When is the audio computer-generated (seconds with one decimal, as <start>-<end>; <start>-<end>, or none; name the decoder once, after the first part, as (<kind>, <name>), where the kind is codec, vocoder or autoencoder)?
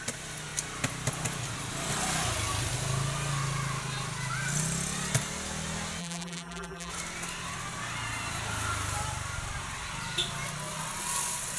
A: 6.0-6.9 (vocoder, BigVGAN v2)